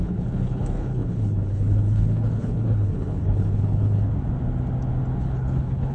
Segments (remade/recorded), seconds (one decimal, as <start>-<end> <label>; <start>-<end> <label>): 0.0-4.1 remade; 4.1-5.2 recorded; 5.2-5.9 remade

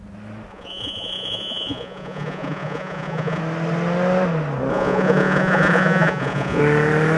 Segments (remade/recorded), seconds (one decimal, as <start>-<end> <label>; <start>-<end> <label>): 0.0-0.5 recorded; 0.5-3.4 remade; 3.4-4.7 recorded; 4.7-6.6 remade; 6.6-7.2 recorded

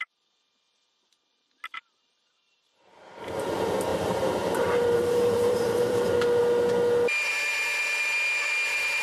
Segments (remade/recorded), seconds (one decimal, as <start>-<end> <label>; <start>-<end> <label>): 0.0-3.9 recorded; 3.9-6.4 remade; 6.4-9.0 recorded

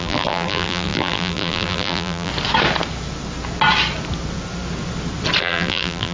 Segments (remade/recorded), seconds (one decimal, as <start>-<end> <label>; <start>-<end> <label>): 0.0-2.3 remade; 2.3-5.4 recorded; 5.4-6.1 remade

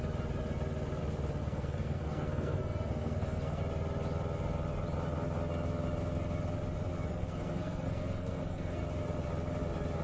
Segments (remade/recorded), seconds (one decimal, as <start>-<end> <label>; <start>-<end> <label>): 0.0-1.4 recorded; 1.4-3.6 remade; 3.6-7.1 recorded; 7.1-8.8 remade; 8.8-10.0 recorded

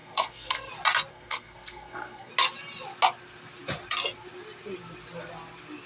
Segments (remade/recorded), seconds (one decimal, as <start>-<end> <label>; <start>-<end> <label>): 0.0-0.7 remade; 0.7-1.1 recorded; 1.1-2.3 remade; 2.3-5.9 recorded